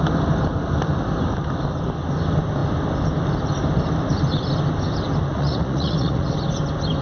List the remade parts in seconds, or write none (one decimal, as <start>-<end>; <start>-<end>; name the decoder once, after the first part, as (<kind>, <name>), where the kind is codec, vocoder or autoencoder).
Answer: 5.3-6.3 (vocoder, Vocos)